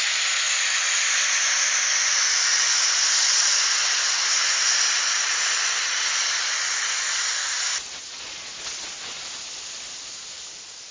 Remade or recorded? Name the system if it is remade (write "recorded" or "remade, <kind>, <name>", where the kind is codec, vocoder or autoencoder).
recorded